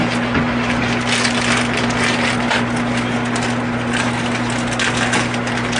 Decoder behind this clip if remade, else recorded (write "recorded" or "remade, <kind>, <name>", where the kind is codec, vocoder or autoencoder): recorded